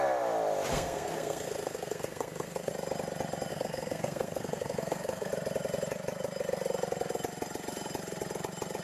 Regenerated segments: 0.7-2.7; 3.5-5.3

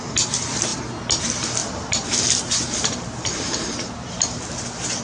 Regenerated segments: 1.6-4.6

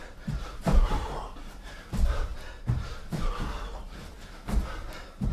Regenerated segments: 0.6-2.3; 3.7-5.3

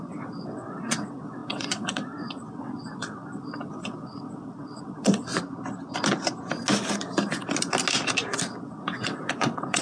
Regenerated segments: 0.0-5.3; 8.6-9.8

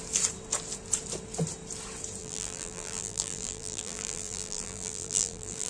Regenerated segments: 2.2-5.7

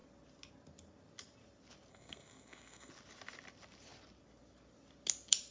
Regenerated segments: 1.9-2.9